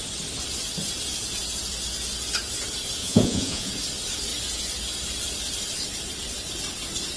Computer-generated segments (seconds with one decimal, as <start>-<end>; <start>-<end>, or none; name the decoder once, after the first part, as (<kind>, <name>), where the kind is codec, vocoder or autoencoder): 3.0-3.7 (vocoder, Vocos)